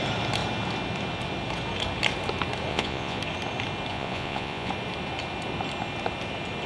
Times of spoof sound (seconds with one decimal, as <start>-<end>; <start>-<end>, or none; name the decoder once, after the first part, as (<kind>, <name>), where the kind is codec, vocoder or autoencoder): 2.7-3.2 (vocoder, Vocos); 3.9-4.7